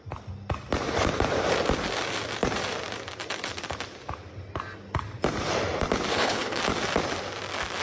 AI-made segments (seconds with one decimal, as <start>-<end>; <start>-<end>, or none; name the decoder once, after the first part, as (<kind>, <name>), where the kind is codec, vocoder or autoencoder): 6.1-6.6 (codec, HILCodec)